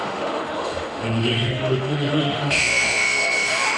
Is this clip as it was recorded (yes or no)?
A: no